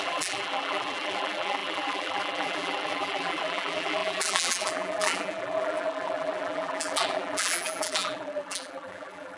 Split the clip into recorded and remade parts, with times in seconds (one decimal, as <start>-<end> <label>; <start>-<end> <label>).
0.0-9.4 remade